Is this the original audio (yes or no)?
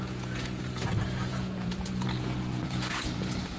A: no